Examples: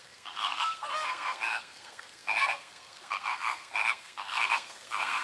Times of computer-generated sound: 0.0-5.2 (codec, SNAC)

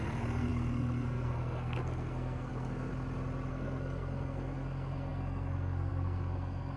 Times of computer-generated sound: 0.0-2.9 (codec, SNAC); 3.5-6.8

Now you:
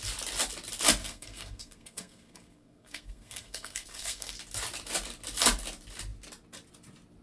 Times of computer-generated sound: 1.0-4.3 (codec, SNAC)

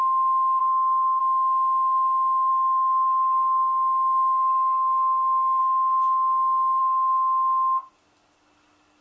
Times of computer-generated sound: 0.6-1.2 (codec, SNAC); 2.5-5.6

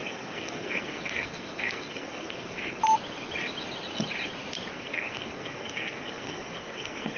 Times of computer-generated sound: 0.0-2.8 (codec, SNAC); 4.7-7.2

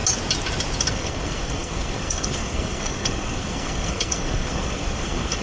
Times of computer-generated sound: 0.9-5.4 (codec, SNAC)

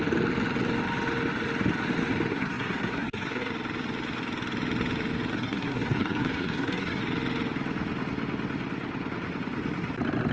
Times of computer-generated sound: 2.3-3.5 (codec, SNAC); 5.3-7.0